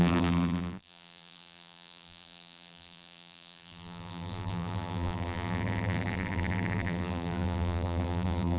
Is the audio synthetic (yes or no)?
yes